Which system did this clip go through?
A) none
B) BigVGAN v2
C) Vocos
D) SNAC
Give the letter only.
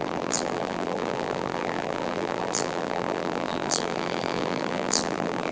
B